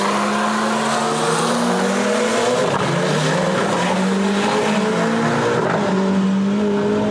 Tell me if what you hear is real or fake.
real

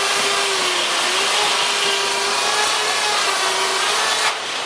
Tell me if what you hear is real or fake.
real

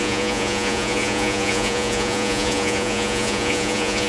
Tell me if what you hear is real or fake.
fake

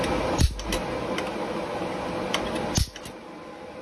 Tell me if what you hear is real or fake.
real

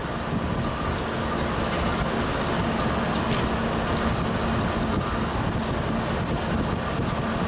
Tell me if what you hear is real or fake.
real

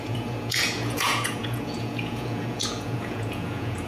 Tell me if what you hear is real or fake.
fake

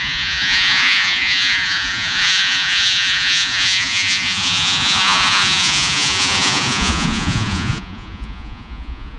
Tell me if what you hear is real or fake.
fake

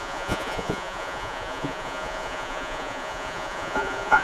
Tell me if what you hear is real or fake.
fake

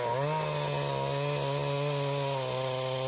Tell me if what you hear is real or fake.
real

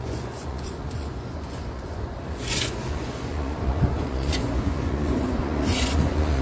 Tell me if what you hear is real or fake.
fake